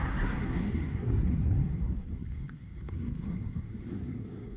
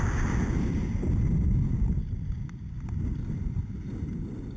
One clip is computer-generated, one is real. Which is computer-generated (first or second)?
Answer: first